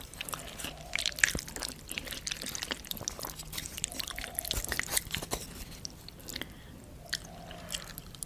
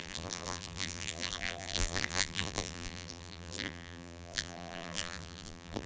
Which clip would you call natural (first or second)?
first